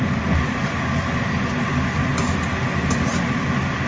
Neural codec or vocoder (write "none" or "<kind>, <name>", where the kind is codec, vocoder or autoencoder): none